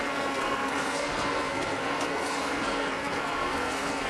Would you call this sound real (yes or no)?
no